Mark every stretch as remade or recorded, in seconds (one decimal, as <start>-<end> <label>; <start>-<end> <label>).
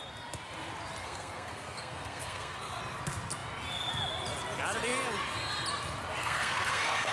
0.0-1.0 recorded; 1.0-2.8 remade; 2.8-6.2 recorded; 6.2-7.1 remade